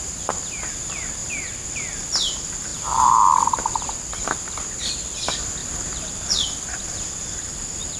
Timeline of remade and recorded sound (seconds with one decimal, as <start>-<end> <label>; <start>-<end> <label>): 0.0-2.7 recorded; 2.7-3.6 remade; 3.6-5.6 recorded; 5.6-7.5 remade; 7.5-8.0 recorded